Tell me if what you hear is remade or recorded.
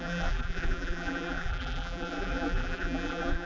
remade